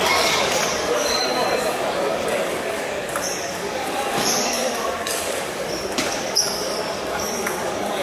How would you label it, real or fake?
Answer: fake